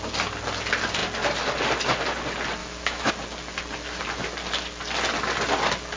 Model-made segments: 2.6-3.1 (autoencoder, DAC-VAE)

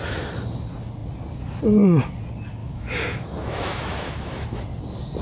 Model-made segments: 2.6-4.6 (autoencoder, DAC-VAE)